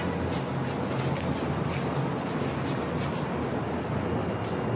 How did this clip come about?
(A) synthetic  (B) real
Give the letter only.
B